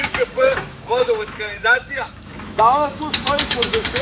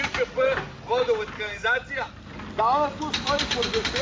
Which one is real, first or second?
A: second